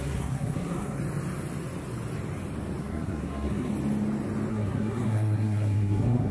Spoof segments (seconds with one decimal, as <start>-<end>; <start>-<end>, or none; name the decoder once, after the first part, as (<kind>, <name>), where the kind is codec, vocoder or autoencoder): 0.0-1.0 (codec, SNAC); 2.8-3.7; 4.5-6.3